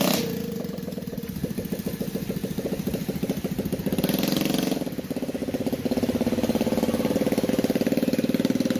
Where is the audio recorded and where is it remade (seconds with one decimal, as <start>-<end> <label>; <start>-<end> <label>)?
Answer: 0.0-8.8 recorded